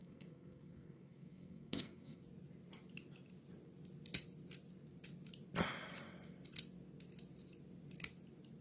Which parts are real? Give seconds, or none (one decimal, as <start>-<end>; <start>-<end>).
2.2-8.6